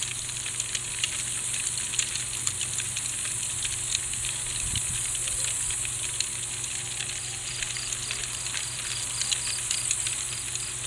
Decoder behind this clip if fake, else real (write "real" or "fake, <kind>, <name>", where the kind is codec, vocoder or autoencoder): real